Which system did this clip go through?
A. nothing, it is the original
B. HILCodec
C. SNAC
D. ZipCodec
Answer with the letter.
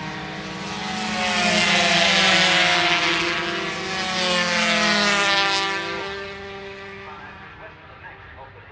A